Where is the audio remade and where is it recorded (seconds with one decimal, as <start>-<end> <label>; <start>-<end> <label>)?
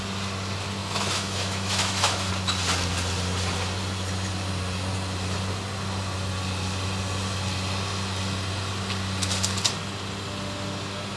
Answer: 0.0-0.8 recorded; 0.8-2.3 remade; 2.3-11.2 recorded